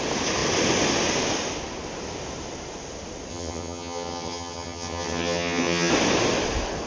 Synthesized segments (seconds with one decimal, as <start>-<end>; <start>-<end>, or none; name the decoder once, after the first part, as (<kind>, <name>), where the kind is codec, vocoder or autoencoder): 3.3-5.9 (vocoder, HiFi-GAN)